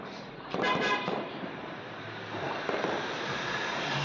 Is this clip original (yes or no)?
no